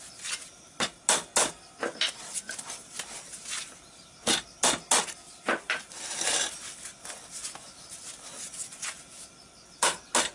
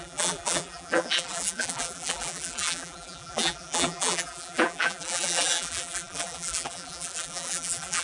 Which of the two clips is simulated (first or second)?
second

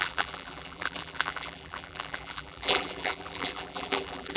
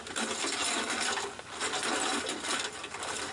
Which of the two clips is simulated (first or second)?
first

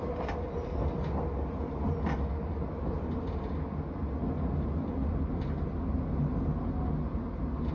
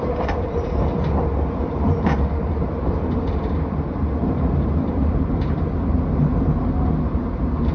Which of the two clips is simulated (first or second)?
second